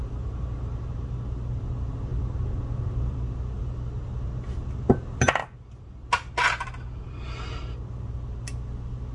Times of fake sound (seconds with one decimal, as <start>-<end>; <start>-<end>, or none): none